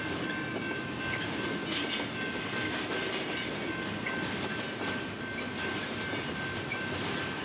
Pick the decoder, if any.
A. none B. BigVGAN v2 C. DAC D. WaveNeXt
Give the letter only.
A